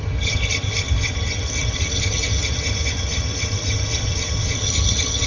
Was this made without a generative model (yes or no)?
no